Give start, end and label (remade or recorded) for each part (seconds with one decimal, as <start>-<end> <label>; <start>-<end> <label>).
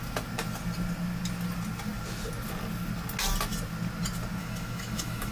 0.0-4.4 recorded; 4.4-5.3 remade